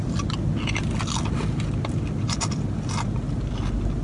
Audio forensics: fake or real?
real